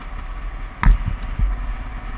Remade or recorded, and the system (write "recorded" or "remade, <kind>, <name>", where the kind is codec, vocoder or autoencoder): recorded